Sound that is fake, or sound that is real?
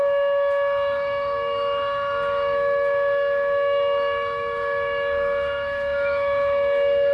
fake